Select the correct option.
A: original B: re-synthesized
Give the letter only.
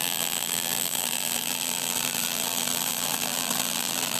B